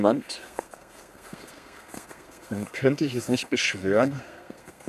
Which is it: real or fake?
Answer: fake